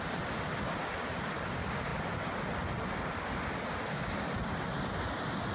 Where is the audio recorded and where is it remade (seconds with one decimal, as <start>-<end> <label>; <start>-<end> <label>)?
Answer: 0.0-5.5 recorded